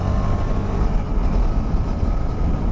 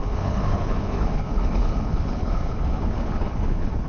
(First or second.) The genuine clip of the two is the first